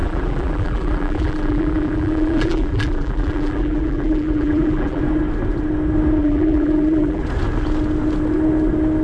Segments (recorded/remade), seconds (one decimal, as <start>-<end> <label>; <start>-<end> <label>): 0.0-5.0 remade; 5.0-6.2 recorded; 6.2-7.2 remade; 7.2-9.0 recorded